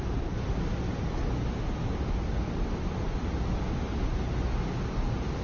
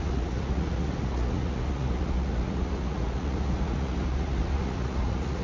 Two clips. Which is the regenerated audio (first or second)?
second